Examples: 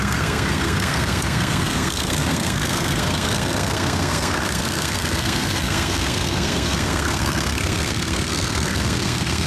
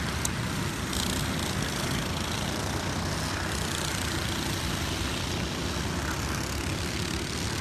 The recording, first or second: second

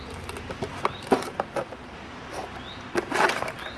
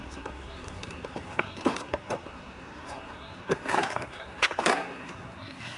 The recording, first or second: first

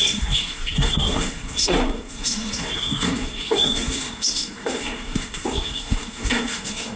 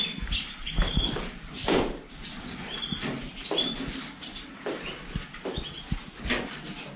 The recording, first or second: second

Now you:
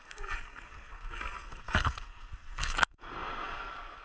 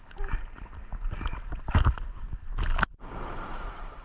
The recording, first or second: second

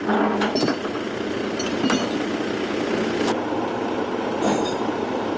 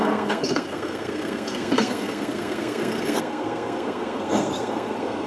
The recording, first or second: first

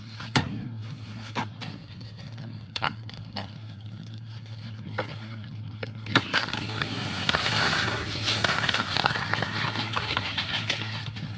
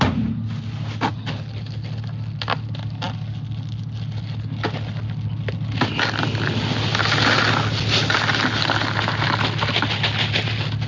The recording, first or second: second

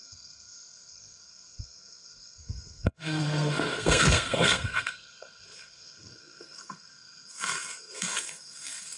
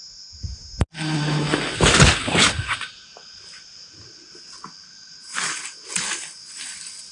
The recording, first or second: second